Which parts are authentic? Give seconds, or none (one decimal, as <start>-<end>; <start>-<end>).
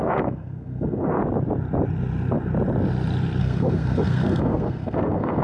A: 1.2-3.4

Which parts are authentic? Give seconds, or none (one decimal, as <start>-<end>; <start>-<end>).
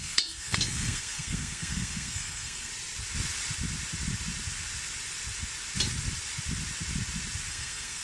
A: 2.7-7.5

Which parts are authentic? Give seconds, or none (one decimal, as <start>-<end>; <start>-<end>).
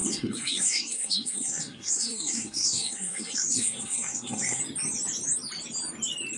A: 4.6-6.4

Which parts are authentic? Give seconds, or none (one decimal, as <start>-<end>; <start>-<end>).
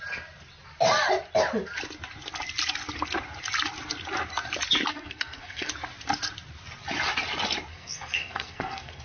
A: 0.0-4.9; 5.7-7.7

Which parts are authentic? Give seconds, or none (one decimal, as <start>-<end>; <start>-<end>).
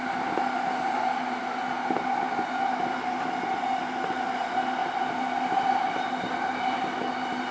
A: 0.0-7.5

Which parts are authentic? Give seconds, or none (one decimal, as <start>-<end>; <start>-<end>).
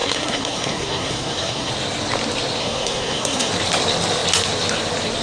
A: 1.7-2.6; 3.5-5.2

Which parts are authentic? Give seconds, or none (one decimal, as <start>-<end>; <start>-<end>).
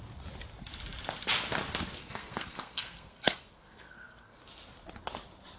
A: 0.0-2.0; 4.4-5.6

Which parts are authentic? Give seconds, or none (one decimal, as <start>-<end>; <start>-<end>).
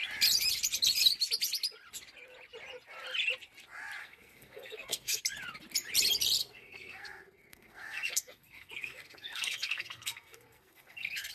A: 0.0-4.0; 5.2-6.4